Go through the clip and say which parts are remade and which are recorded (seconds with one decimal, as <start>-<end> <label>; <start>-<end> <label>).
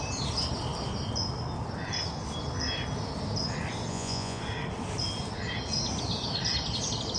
0.0-3.9 recorded; 3.9-4.4 remade; 4.4-7.2 recorded